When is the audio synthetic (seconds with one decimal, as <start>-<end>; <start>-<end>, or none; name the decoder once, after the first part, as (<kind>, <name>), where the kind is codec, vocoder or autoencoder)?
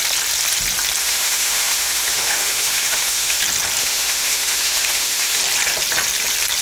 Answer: 1.0-3.4 (autoencoder, DAC-VAE); 3.8-5.4